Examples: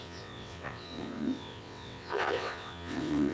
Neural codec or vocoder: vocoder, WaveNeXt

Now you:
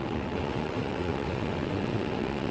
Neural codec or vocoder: vocoder, WaveNeXt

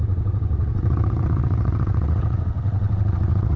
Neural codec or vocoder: vocoder, WaveNeXt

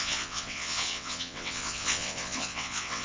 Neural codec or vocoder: vocoder, WaveNeXt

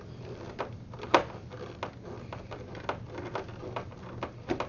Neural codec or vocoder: none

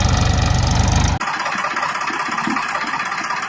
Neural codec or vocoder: none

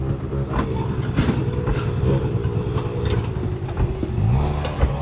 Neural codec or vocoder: none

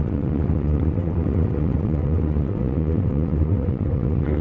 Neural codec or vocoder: vocoder, WaveNeXt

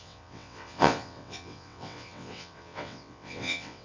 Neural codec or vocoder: vocoder, WaveNeXt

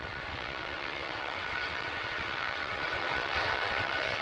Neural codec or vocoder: vocoder, WaveNeXt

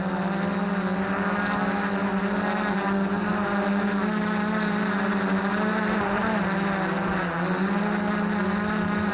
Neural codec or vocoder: none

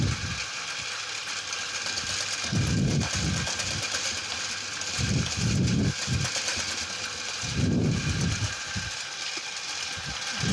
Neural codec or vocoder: none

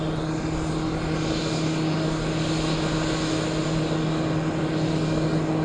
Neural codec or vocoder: none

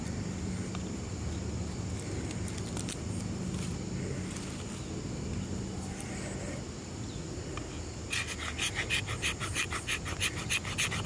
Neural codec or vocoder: none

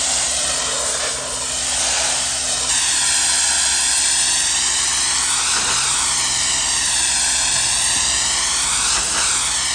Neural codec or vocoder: none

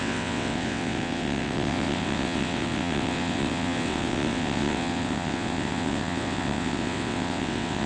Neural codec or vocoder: vocoder, WaveNeXt